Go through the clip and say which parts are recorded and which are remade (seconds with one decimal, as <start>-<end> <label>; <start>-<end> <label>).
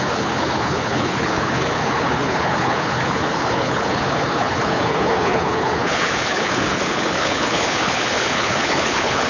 0.0-9.3 remade